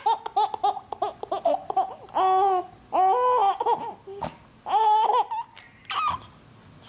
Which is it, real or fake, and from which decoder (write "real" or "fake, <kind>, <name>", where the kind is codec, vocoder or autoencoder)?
real